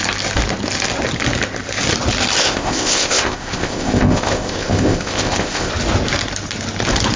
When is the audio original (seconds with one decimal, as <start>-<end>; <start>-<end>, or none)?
0.0-2.4; 5.7-7.2